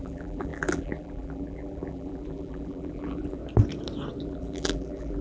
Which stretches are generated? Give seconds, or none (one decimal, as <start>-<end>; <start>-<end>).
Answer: 0.0-3.4; 4.2-5.2